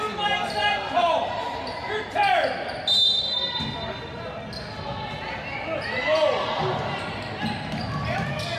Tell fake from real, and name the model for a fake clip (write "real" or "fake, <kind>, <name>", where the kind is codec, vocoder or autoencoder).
real